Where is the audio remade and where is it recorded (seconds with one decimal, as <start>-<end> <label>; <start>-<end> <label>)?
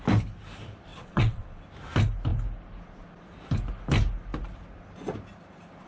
0.0-0.9 recorded; 0.9-1.6 remade; 1.6-5.9 recorded